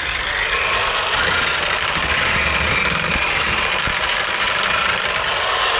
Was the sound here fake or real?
real